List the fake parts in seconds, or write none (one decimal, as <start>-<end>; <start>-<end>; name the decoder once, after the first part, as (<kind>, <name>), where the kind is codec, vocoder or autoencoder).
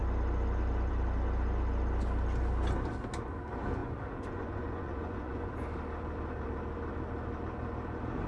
3.8-5.5 (vocoder, Vocos)